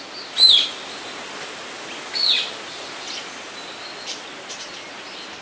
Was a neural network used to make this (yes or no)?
no